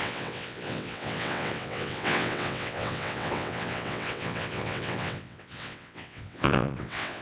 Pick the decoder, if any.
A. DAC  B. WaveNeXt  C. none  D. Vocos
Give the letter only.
B